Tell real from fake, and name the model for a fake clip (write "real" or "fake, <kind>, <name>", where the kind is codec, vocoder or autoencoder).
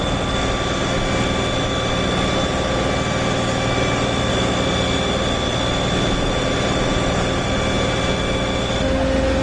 real